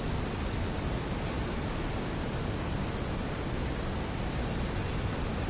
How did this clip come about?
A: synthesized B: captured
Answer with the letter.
B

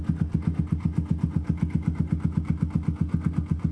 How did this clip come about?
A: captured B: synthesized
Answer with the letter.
A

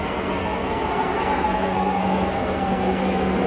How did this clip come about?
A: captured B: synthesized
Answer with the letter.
B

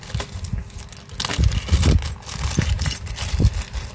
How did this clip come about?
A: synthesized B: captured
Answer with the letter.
B